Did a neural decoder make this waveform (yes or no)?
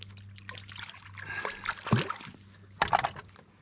no